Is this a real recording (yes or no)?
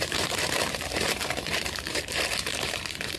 no